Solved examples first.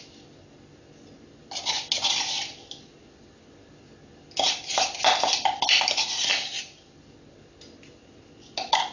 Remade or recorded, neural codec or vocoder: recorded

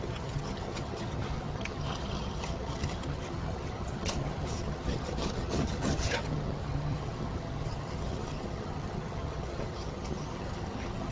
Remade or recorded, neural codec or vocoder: remade, vocoder, HiFi-GAN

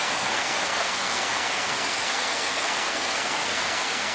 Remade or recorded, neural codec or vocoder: remade, codec, SNAC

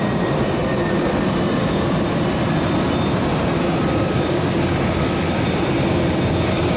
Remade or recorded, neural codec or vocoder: remade, vocoder, BigVGAN v2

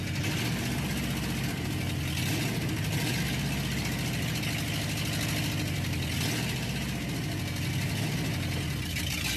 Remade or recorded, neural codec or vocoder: recorded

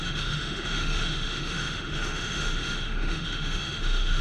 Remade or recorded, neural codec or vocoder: remade, autoencoder, DAC-VAE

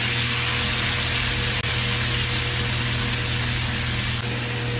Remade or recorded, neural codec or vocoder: recorded